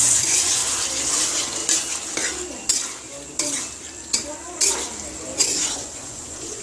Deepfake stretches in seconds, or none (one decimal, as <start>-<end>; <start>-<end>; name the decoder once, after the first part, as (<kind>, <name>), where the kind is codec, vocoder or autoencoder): 0.0-0.6 (vocoder, Vocos); 1.1-1.6; 5.4-6.6